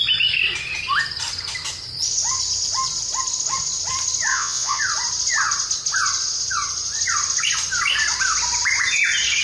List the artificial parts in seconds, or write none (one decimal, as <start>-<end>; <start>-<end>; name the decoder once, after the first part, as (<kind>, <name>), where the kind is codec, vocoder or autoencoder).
4.3-4.8 (vocoder, Vocos)